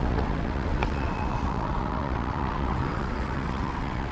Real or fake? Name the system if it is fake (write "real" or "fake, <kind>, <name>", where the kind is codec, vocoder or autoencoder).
fake, vocoder, WaveNeXt